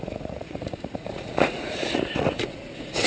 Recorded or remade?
remade